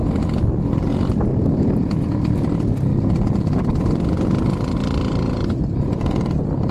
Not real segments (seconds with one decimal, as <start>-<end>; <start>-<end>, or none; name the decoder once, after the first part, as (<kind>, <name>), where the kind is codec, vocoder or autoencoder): 1.3-2.5 (vocoder, BigVGAN v2)

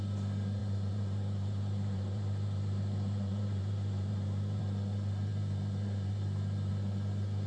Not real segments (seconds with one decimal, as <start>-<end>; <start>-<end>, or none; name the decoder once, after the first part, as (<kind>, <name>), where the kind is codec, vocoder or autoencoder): 0.6-4.6 (vocoder, BigVGAN v2); 5.3-6.7

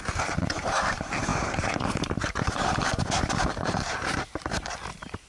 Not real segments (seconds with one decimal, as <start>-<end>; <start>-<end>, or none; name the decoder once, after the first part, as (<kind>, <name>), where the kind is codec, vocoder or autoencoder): 0.0-5.3 (vocoder, BigVGAN v2)

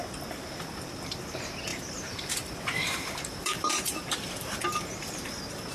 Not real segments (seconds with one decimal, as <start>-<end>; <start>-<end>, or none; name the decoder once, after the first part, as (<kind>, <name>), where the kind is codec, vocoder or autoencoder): 1.7-2.5 (vocoder, BigVGAN v2); 3.4-4.6

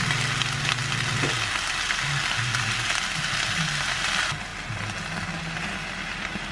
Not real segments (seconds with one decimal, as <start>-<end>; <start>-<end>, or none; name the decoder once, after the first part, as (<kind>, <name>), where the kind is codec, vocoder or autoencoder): none